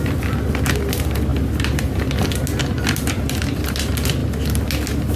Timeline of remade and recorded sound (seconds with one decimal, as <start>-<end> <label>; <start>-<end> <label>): 0.0-5.2 recorded